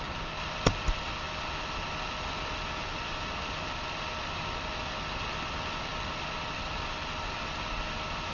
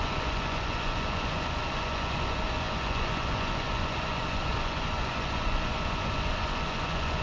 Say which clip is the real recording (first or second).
first